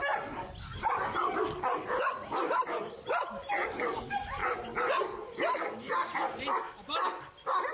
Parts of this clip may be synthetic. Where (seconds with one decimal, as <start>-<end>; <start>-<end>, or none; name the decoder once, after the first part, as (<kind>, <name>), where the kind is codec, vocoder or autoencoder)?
none